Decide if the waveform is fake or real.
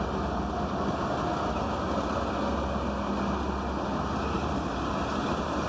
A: real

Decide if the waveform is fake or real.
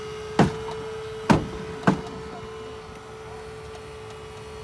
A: real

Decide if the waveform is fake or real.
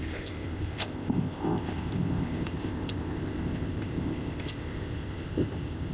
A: fake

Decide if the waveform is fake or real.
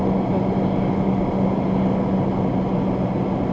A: real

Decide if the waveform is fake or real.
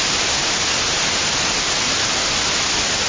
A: real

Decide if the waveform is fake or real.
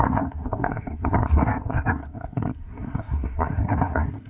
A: fake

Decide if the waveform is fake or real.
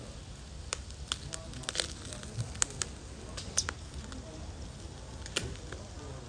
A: real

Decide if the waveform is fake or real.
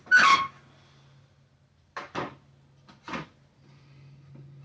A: real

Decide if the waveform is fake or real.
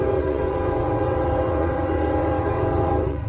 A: fake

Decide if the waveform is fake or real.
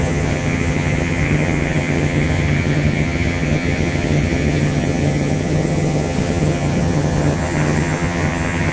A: fake